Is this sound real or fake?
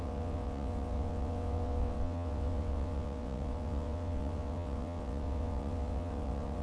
fake